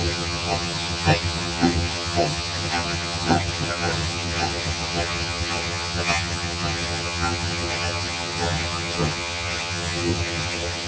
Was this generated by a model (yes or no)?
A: yes